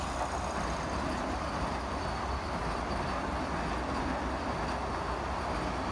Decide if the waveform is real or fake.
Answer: real